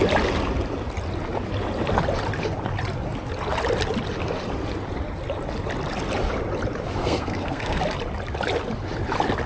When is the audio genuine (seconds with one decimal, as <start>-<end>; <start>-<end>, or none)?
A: 0.0-7.0; 7.8-9.5